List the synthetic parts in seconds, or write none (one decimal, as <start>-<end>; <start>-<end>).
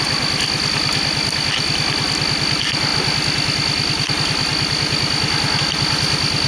none